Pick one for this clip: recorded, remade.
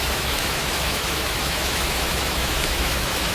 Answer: remade